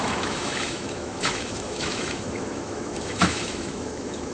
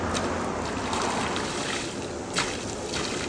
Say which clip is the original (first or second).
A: second